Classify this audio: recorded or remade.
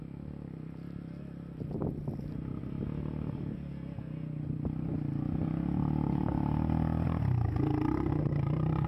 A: recorded